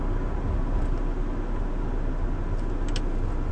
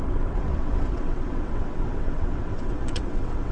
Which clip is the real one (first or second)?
first